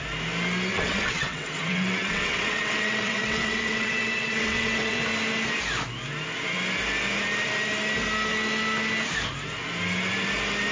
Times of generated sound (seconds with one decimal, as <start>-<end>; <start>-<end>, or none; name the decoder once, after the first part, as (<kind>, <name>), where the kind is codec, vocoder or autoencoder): 0.7-5.0 (vocoder, WaveNeXt)